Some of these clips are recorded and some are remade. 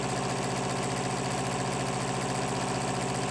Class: remade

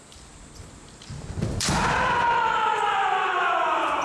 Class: remade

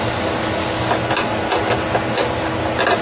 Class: recorded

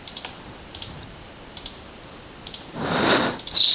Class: remade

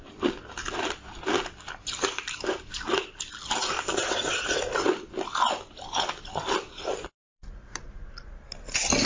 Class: recorded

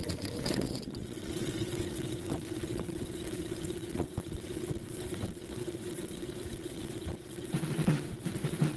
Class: remade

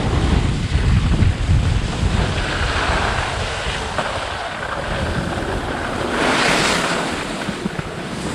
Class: recorded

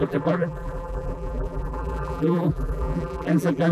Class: remade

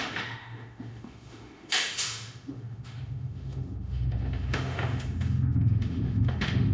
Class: remade